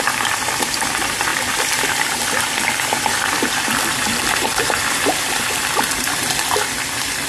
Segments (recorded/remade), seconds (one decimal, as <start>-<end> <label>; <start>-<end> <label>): 0.0-7.3 remade